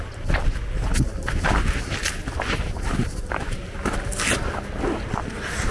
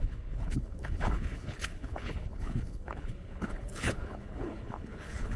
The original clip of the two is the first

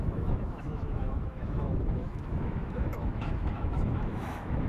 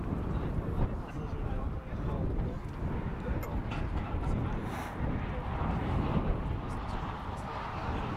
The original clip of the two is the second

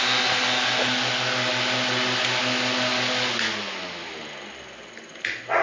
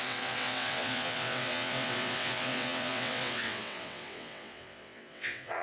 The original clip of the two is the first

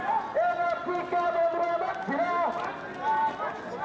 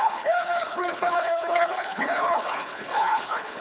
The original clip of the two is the first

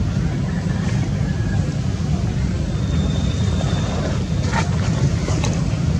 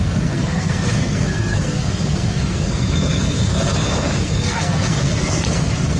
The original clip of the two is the first